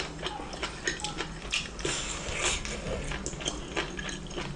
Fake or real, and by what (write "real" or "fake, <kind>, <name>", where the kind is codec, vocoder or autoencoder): real